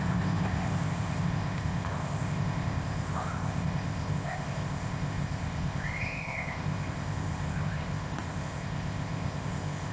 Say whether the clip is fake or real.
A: fake